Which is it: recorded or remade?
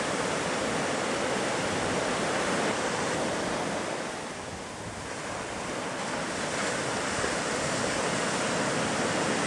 remade